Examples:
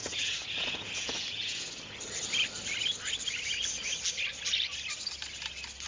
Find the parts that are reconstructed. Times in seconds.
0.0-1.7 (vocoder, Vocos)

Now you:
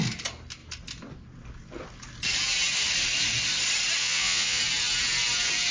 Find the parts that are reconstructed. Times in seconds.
4.0-4.6 (vocoder, Vocos)

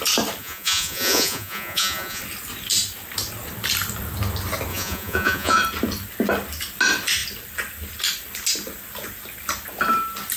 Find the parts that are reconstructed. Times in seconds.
0.4-2.2 (vocoder, Vocos); 4.7-5.6

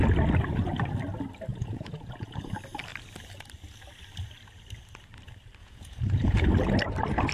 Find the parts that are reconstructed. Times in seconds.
1.5-2.5 (vocoder, Vocos); 5.6-6.5

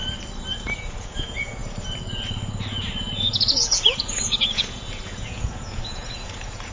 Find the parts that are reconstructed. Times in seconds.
0.8-1.6 (vocoder, Vocos); 3.2-6.7

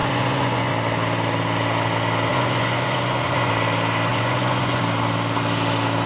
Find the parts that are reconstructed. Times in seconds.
0.0-0.7 (vocoder, Vocos); 2.3-3.5; 4.1-4.8

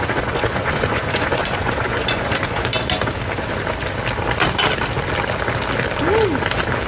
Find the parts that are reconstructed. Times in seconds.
0.0-2.7 (vocoder, Vocos)

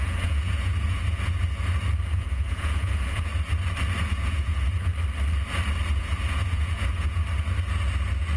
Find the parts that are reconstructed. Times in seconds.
0.0-1.4 (vocoder, Vocos); 2.1-3.3; 4.0-4.9; 5.9-7.2